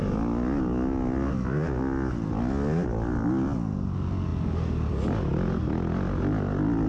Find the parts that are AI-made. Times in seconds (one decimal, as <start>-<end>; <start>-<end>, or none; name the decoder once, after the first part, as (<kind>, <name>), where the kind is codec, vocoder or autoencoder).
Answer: none